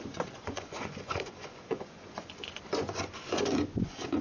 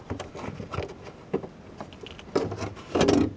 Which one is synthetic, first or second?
first